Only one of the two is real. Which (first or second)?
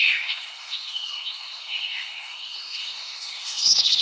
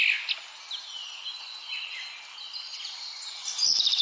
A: second